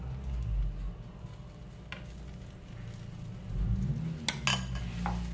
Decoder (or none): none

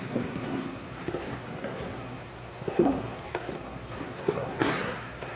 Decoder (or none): codec, SNAC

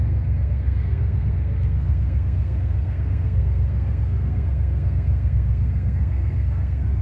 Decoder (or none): codec, SNAC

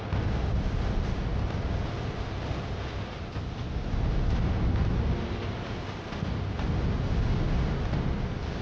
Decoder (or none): none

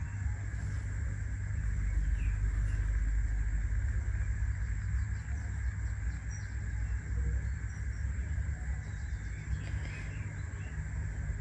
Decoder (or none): none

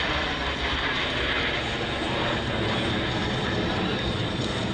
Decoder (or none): none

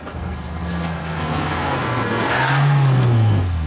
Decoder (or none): codec, SNAC